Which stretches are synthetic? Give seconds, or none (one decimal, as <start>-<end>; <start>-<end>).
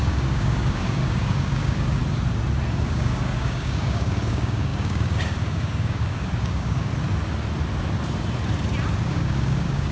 0.0-2.0; 2.7-6.9; 9.0-9.9